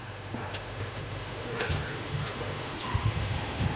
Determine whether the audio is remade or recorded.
remade